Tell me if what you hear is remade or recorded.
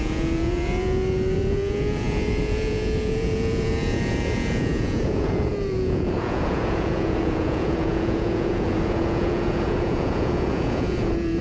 remade